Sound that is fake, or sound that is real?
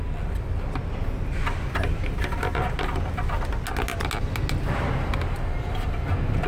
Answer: real